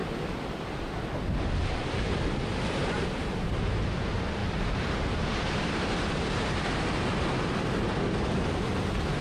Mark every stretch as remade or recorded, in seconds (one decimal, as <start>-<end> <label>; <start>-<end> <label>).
0.0-2.8 recorded; 2.8-3.6 remade; 3.6-4.4 recorded; 4.4-8.0 remade; 8.0-9.2 recorded